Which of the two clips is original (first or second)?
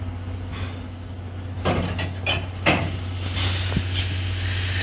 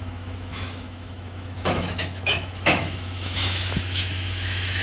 first